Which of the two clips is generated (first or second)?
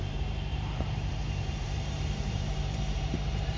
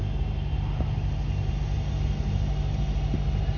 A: first